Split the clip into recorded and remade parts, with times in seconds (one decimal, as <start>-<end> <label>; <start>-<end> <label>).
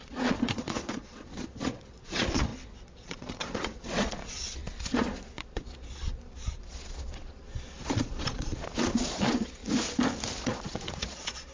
0.0-9.6 remade; 9.6-10.4 recorded; 10.4-11.5 remade